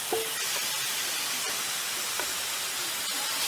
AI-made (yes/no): no